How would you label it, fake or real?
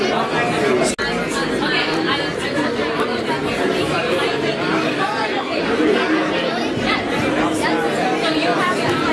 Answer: real